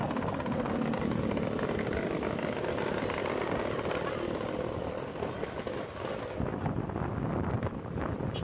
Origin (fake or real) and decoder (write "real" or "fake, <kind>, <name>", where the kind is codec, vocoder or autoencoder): real